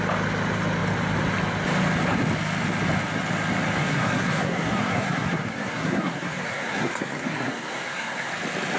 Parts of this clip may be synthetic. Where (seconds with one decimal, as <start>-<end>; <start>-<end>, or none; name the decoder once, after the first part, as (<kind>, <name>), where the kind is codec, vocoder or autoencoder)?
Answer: 3.8-8.3 (codec, SNAC)